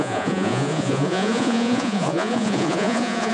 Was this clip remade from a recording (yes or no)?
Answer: yes